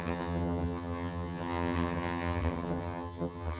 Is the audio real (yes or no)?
no